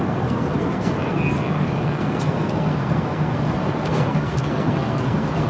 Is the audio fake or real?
fake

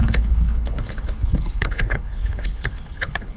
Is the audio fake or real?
fake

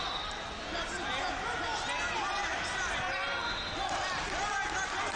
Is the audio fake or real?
real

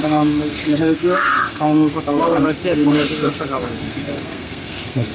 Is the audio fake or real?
fake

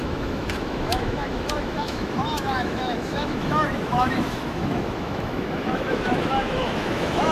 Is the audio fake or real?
fake